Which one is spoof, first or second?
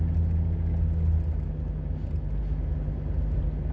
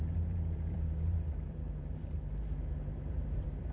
second